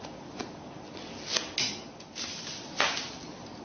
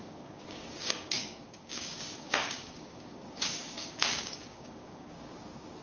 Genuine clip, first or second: first